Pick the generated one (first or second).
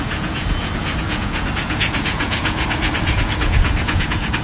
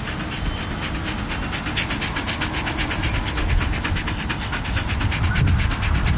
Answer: first